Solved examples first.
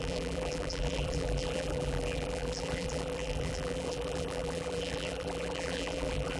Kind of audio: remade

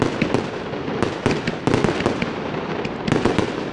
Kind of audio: recorded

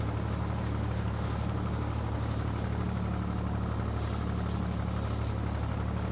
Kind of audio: recorded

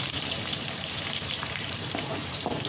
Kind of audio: remade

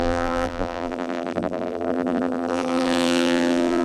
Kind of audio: remade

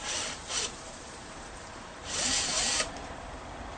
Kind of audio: remade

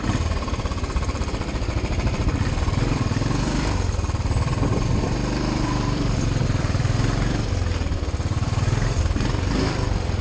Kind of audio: remade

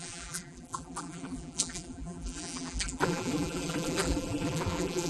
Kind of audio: remade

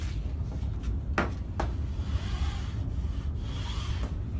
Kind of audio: recorded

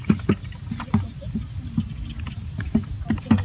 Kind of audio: recorded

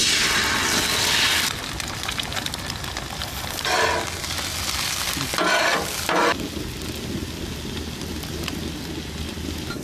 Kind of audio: recorded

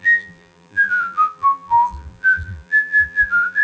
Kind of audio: remade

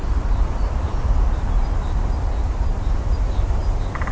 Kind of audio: recorded